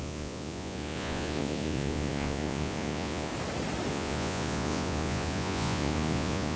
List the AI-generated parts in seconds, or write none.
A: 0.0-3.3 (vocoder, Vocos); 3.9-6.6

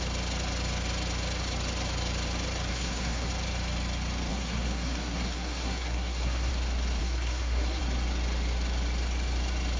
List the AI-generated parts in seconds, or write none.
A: 2.7-3.3 (codec, SNAC); 4.3-6.5; 7.0-7.8